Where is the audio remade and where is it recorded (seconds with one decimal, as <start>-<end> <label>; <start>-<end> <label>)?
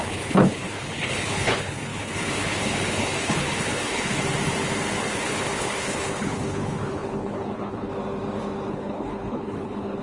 0.0-4.2 remade; 4.2-5.1 recorded; 5.1-7.9 remade; 7.9-8.7 recorded; 8.7-10.0 remade